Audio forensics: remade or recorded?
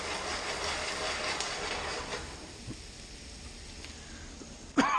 recorded